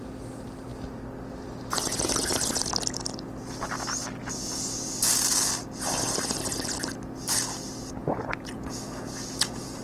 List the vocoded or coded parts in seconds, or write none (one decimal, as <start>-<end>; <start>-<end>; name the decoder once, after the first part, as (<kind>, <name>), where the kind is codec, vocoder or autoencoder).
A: 4.2-5.0 (vocoder, Vocos); 8.0-9.8